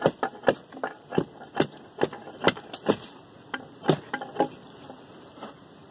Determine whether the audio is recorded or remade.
recorded